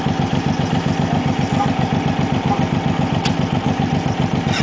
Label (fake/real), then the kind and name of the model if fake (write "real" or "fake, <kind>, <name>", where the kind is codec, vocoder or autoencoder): real